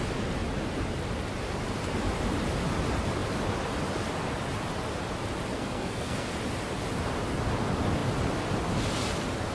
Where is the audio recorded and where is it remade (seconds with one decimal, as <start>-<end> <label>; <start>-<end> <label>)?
0.0-5.5 recorded; 5.5-6.3 remade; 6.3-9.5 recorded